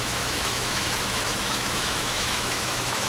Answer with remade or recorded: remade